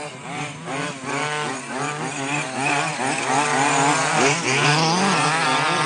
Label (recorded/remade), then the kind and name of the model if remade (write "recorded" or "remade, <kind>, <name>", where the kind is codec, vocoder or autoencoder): recorded